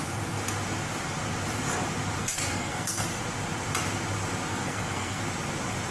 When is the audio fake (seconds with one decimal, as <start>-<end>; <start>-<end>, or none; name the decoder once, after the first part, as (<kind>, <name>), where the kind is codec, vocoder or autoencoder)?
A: 2.2-3.2 (codec, SNAC); 4.5-5.2